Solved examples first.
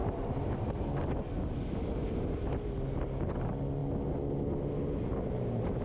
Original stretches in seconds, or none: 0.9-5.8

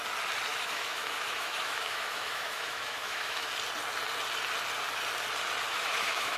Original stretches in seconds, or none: 0.0-0.5; 3.5-5.7

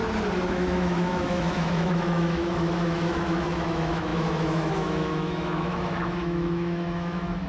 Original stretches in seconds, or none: 0.0-0.5

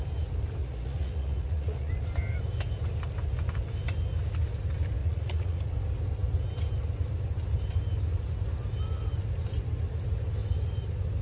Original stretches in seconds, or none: 0.0-0.6; 1.9-5.0; 5.7-11.2